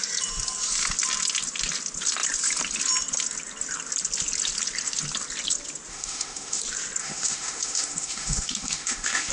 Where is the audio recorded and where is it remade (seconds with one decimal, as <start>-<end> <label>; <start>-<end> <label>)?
0.0-5.9 recorded; 5.9-6.6 remade; 6.6-7.0 recorded; 7.0-9.3 remade

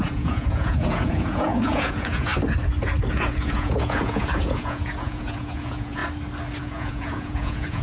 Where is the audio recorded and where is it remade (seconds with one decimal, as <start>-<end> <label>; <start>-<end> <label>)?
0.0-2.3 remade; 2.3-3.1 recorded; 3.1-6.0 remade; 6.0-6.6 recorded; 6.6-7.8 remade

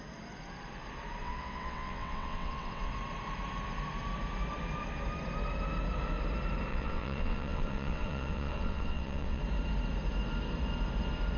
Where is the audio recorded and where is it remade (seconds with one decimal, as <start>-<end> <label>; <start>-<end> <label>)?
0.0-1.2 recorded; 1.2-2.9 remade; 2.9-6.7 recorded; 6.7-9.4 remade; 9.4-11.4 recorded

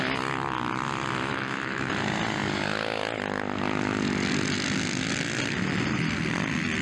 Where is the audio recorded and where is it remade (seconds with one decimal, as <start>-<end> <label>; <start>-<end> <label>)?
0.0-1.3 recorded; 1.3-1.9 remade; 1.9-6.8 recorded

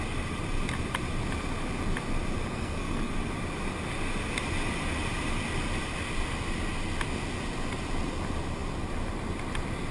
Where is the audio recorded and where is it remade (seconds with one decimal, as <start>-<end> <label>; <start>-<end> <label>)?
0.0-2.5 recorded; 2.5-3.1 remade; 3.1-9.9 recorded